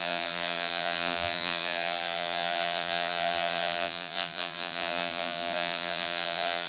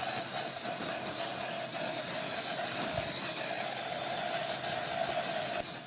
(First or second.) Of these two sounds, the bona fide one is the second